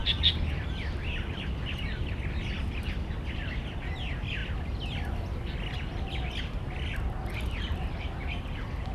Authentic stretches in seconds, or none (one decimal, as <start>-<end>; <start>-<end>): 0.0-8.9